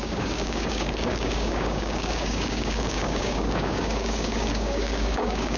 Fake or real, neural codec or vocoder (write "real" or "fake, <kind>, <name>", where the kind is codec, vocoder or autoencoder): fake, codec, DAC